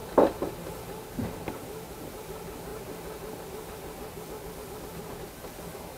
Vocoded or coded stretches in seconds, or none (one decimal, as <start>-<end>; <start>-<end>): none